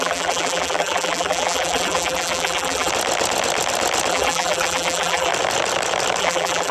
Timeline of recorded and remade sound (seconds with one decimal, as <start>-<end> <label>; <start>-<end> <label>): 0.0-2.9 remade; 2.9-4.1 recorded; 4.1-5.3 remade; 5.3-6.2 recorded; 6.2-6.7 remade